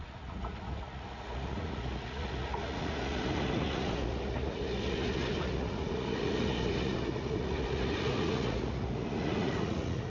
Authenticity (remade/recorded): remade